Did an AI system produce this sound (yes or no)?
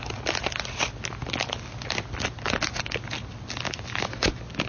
no